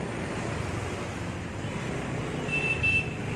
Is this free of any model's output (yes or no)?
yes